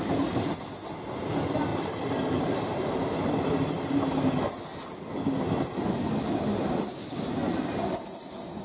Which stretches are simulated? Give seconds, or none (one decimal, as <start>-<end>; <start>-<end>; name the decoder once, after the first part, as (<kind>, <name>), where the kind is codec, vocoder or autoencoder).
1.7-4.6 (vocoder, BigVGAN v2)